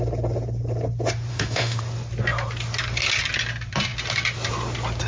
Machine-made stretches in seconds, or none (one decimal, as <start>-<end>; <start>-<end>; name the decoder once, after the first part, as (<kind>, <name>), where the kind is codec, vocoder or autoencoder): 1.3-1.8 (autoencoder, DAC-VAE)